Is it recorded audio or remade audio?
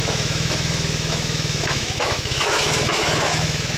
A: remade